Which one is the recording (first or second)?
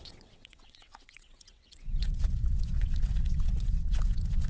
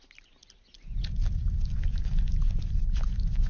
second